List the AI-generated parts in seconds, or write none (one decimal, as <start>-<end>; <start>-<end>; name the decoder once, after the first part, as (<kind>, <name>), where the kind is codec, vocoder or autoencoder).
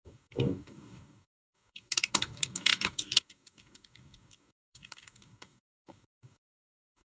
0.0-7.2 (codec, DAC)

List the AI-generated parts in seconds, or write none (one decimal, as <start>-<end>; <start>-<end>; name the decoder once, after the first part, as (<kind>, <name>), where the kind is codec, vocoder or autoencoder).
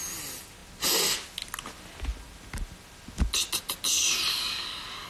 4.3-5.1 (codec, DAC)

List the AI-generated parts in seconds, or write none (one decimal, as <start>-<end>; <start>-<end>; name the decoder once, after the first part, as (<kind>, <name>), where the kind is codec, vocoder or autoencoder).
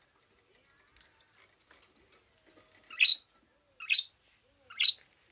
none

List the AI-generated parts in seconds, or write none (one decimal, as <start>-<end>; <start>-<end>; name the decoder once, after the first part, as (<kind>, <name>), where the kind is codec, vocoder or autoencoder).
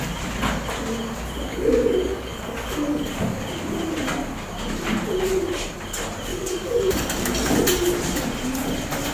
1.5-3.1 (codec, DAC); 6.3-6.9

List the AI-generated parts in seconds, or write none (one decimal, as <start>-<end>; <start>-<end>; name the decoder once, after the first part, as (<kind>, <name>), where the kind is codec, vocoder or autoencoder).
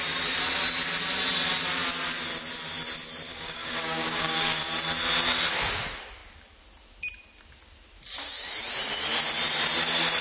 3.3-4.6 (codec, DAC)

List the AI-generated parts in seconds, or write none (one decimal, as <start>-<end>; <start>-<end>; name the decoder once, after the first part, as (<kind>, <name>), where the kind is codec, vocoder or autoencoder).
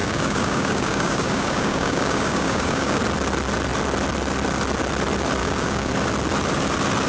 0.0-3.0 (codec, DAC); 5.4-5.9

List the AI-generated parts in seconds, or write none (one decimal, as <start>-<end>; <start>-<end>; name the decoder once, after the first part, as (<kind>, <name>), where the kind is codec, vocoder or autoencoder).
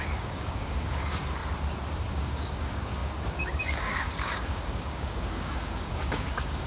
0.0-1.4 (codec, DAC); 2.1-6.7